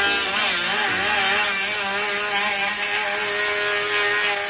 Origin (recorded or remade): recorded